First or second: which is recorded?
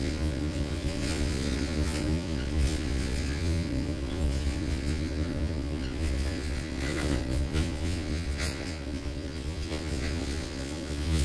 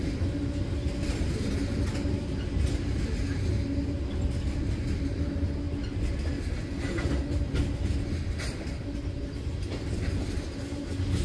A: second